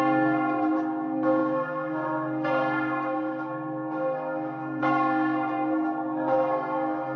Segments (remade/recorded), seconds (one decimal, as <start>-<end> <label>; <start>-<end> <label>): 0.0-7.2 remade